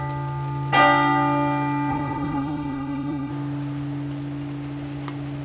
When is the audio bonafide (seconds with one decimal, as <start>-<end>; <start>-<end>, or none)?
0.0-1.9; 3.3-5.4